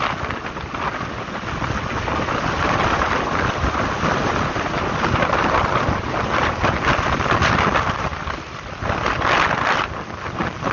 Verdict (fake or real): real